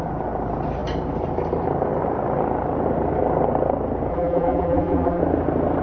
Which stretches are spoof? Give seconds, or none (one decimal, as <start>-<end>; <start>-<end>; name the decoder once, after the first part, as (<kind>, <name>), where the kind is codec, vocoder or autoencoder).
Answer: 4.1-5.2 (vocoder, BigVGAN v2)